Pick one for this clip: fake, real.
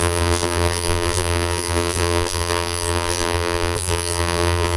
fake